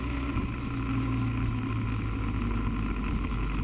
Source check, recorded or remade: recorded